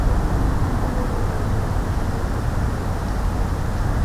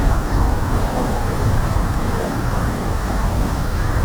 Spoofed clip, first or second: second